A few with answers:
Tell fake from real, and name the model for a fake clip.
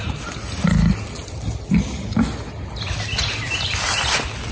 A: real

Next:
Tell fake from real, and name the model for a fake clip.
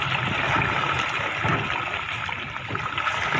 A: real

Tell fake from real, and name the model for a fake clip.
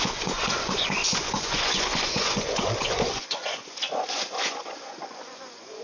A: fake, vocoder, Vocos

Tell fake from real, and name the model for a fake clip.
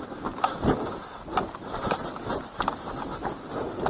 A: real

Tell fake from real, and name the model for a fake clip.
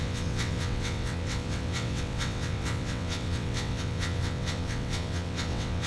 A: fake, vocoder, WaveNeXt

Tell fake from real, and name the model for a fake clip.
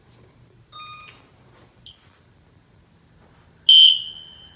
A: real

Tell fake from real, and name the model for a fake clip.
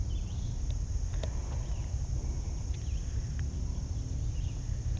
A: real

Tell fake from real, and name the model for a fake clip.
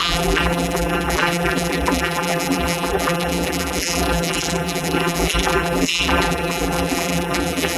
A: fake, vocoder, BigVGAN v2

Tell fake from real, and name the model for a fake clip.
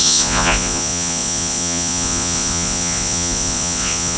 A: fake, vocoder, Vocos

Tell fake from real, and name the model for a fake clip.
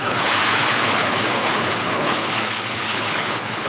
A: fake, codec, HILCodec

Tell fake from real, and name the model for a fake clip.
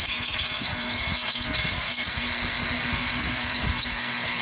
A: fake, codec, SNAC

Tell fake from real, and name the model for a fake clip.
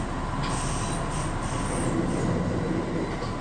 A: real